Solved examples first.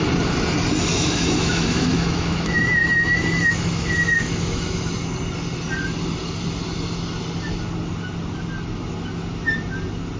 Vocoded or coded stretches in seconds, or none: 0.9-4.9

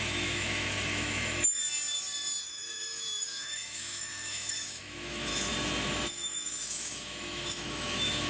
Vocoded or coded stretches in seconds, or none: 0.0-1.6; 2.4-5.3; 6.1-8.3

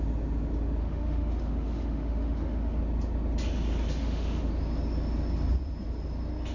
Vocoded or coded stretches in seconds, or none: 0.8-2.8; 4.0-4.5

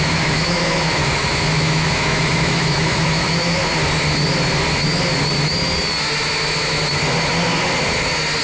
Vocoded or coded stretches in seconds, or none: 0.0-3.6

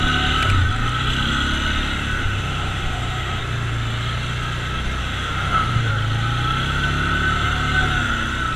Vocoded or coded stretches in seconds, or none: 2.2-3.4; 5.0-5.9

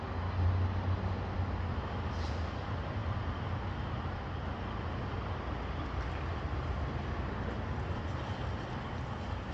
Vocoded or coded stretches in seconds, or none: none

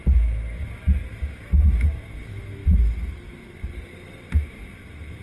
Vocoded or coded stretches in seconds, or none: 1.2-2.6; 4.8-5.2

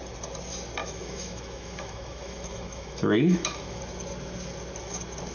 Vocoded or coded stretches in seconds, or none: 0.8-3.8